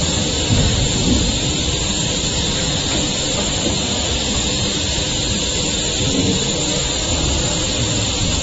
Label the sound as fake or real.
fake